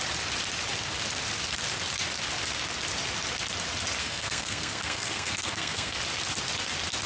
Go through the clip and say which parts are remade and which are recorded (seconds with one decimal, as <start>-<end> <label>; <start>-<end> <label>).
0.0-4.0 recorded; 4.0-6.0 remade; 6.0-7.1 recorded